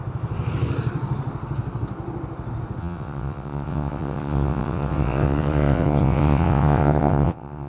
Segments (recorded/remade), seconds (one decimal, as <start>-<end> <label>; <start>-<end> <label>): 0.0-2.8 recorded; 2.8-7.7 remade

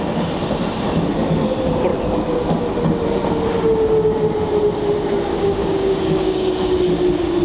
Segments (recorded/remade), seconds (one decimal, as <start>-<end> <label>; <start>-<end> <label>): 0.0-5.3 recorded; 5.3-6.8 remade; 6.8-7.4 recorded

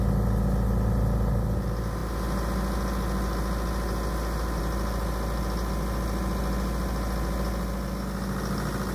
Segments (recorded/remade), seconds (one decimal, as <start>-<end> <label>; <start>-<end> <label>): 0.0-8.9 recorded

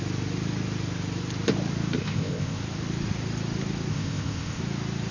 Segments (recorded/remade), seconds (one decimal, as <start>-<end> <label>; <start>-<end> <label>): 0.0-2.0 recorded; 2.0-2.6 remade; 2.6-3.9 recorded; 3.9-4.6 remade; 4.6-5.1 recorded

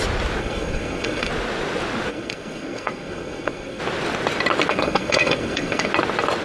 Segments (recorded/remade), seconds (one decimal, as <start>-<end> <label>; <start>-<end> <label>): 0.0-0.4 recorded; 0.4-1.3 remade; 1.3-2.1 recorded; 2.1-3.8 remade; 3.8-4.7 recorded; 4.7-5.9 remade; 5.9-6.4 recorded